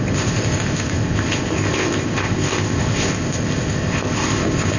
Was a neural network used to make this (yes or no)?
yes